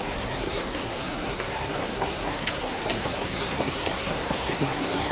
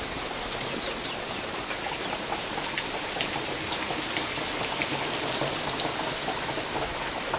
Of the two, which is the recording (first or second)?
second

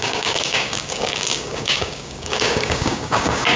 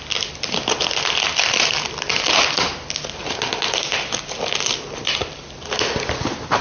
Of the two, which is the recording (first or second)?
second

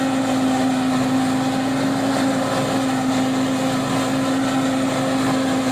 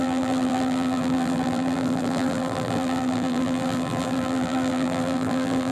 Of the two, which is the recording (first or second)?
first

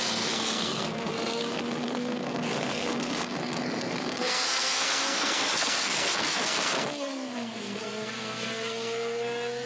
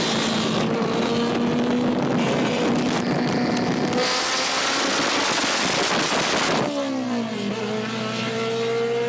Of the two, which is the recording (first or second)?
second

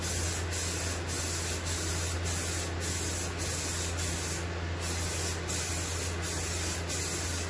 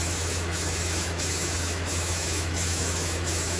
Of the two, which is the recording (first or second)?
first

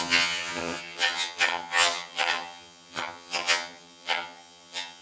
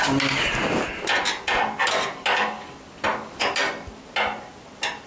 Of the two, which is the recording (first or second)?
second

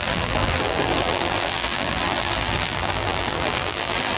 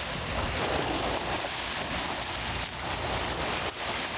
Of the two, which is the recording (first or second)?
second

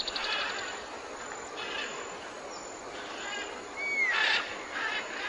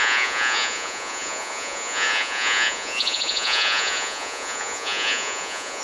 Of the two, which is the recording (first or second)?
first